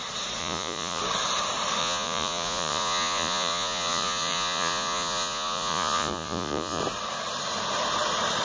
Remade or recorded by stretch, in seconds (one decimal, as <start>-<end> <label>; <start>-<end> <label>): 0.0-0.4 recorded; 0.4-1.0 remade; 1.0-1.8 recorded; 1.8-6.8 remade; 6.8-8.4 recorded